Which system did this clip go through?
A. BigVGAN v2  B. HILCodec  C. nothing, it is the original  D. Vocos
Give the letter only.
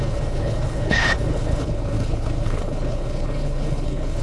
B